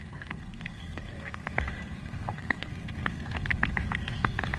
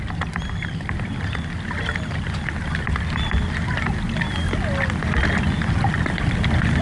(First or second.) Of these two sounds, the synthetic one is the first